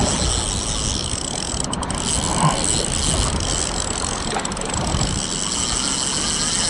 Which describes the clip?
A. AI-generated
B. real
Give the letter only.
B